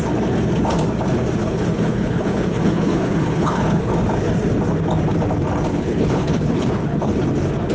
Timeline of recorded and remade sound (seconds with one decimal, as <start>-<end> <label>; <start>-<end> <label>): 0.0-1.4 recorded; 1.4-3.9 remade; 3.9-5.7 recorded; 5.7-7.2 remade; 7.2-7.7 recorded